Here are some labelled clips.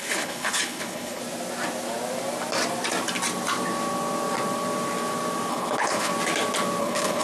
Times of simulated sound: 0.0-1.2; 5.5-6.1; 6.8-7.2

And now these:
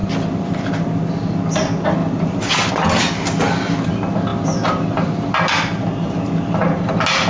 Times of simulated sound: 2.0-2.7; 4.3-5.3

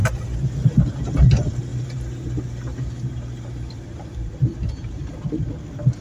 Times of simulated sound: 1.7-5.3

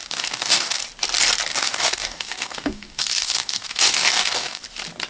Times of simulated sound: 0.0-0.8; 1.5-4.6

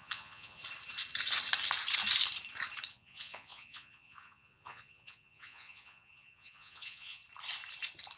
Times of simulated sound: 0.0-0.6; 2.9-7.2

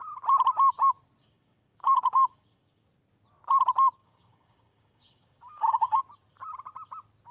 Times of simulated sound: 1.2-2.9; 4.0-6.0

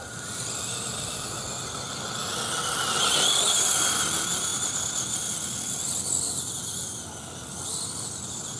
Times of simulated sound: none

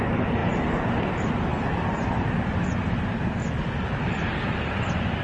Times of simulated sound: none